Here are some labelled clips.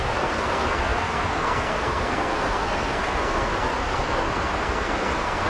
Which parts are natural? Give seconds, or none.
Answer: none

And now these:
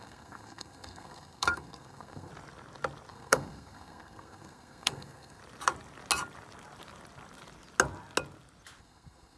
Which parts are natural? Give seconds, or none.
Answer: 2.3-3.1; 5.4-8.8

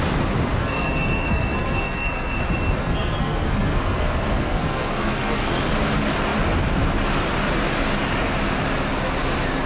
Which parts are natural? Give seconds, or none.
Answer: 0.0-0.6; 2.4-2.8; 5.5-9.7

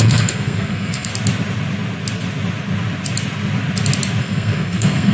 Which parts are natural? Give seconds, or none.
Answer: 1.1-4.2

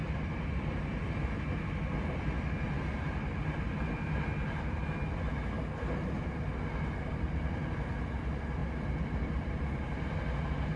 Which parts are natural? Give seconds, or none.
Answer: 0.0-10.8